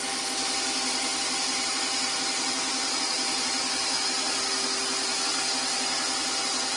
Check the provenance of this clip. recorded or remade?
recorded